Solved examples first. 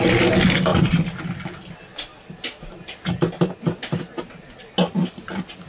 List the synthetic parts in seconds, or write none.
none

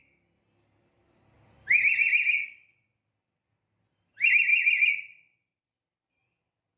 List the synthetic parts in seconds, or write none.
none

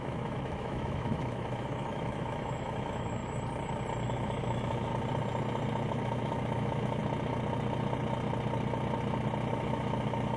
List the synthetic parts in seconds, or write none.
0.0-3.2 (autoencoder, DAC-VAE); 4.0-4.9; 5.9-7.0; 9.5-10.4

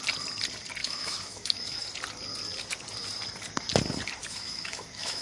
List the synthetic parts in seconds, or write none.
0.8-1.8 (autoencoder, DAC-VAE); 4.2-5.2

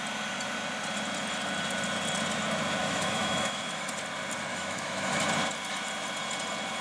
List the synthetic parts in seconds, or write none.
2.8-3.9 (autoencoder, DAC-VAE); 4.5-5.2